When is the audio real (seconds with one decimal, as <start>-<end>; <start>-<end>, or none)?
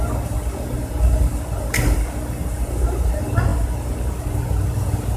0.0-5.2